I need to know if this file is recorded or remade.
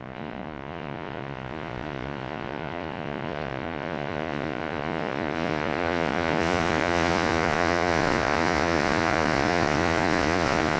remade